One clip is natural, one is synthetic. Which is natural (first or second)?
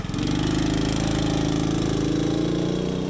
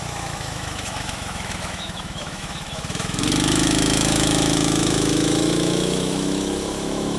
first